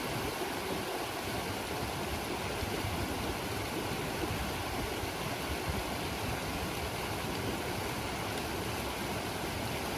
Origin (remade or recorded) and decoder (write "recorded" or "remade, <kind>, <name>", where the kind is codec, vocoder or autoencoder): recorded